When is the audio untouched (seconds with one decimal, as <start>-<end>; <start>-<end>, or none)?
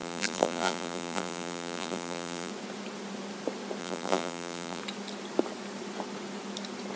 2.5-3.8; 4.8-7.0